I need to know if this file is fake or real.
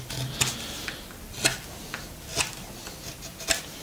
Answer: real